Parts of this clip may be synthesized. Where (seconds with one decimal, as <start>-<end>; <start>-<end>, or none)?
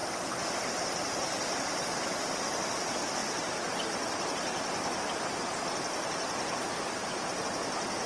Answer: none